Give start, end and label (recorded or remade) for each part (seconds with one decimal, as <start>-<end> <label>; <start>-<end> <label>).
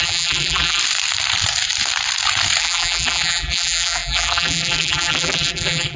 0.0-0.8 remade; 0.8-2.6 recorded; 2.6-6.0 remade